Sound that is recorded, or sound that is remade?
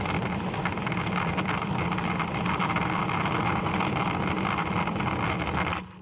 recorded